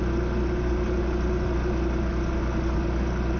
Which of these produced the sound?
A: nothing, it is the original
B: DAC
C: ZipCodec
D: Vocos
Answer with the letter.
A